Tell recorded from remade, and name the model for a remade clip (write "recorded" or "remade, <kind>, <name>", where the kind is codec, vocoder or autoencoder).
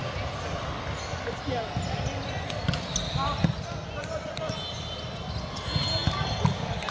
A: recorded